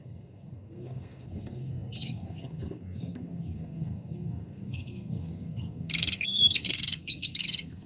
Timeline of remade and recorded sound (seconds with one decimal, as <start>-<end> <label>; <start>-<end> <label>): 0.0-7.9 remade